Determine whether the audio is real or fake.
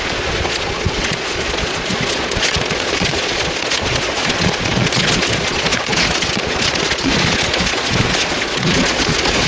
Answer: fake